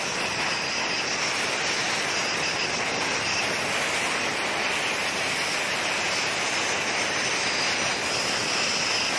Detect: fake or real real